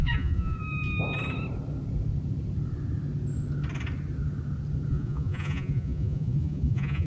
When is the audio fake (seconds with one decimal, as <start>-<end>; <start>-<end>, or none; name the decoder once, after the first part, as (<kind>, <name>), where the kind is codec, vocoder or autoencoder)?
0.0-0.6 (vocoder, Vocos); 4.9-7.1